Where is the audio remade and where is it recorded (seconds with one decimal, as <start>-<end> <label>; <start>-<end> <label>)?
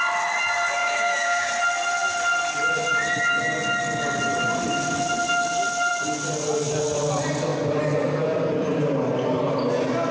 0.0-0.8 recorded; 0.8-1.5 remade; 1.5-10.1 recorded